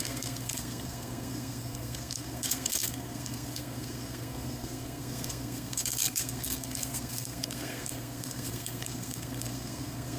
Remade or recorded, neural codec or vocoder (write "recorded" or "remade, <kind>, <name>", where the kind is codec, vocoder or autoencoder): remade, codec, SNAC